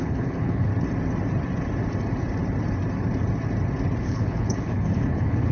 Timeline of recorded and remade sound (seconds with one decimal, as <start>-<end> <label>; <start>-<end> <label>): 0.0-0.7 remade; 0.7-4.0 recorded; 4.0-5.5 remade